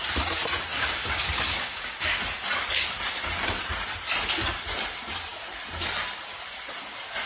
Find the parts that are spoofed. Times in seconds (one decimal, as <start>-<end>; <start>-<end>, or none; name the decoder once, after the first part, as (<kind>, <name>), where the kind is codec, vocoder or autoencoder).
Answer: 0.7-2.2 (codec, DAC)